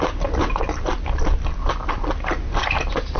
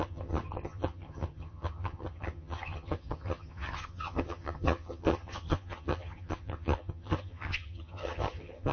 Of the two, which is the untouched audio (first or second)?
first